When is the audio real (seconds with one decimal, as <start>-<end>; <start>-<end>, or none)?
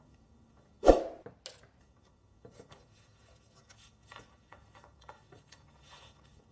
1.0-1.8